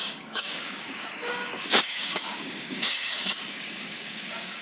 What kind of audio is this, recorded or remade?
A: remade